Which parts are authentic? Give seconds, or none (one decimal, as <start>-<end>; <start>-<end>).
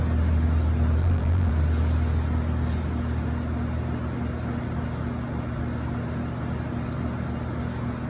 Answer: 0.0-1.0; 1.5-8.1